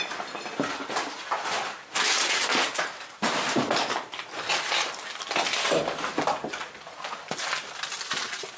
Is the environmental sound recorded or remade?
recorded